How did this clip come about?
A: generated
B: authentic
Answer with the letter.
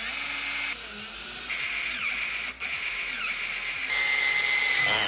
B